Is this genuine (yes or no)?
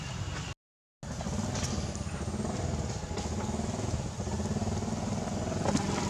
yes